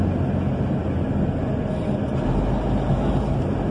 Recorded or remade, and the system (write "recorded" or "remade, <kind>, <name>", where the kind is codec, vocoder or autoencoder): recorded